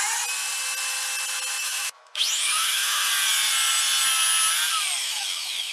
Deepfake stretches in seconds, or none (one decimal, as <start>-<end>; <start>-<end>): 1.6-3.1; 5.0-5.7